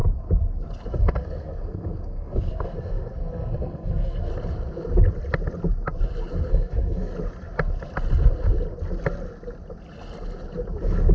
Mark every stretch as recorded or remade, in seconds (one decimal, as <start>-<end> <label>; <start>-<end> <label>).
0.0-0.9 recorded; 0.9-4.3 remade; 4.3-6.5 recorded; 6.5-7.1 remade; 7.1-11.1 recorded

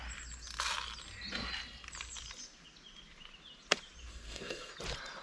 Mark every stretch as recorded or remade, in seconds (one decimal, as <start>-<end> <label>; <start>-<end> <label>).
0.0-4.1 recorded; 4.1-4.7 remade; 4.7-5.2 recorded